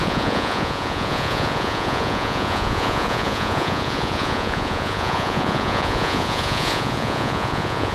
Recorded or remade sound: remade